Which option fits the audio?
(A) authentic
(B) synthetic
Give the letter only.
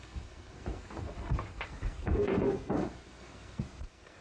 B